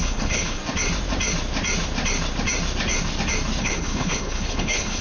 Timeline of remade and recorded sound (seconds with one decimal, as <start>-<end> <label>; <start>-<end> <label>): 0.0-0.6 remade; 0.6-3.6 recorded; 3.6-5.0 remade